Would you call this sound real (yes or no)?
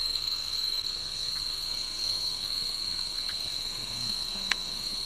no